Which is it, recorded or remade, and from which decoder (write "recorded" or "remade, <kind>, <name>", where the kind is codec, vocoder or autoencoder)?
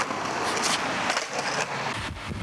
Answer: recorded